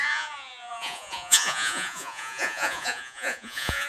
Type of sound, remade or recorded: remade